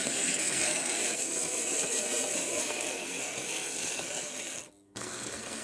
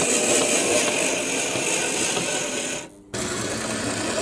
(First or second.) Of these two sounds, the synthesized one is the first